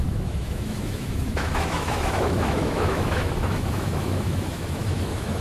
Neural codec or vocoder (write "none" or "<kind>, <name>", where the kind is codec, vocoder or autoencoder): autoencoder, DAC-VAE